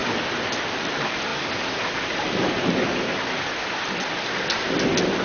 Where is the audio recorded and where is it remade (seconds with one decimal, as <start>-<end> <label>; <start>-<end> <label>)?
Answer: 0.0-5.2 recorded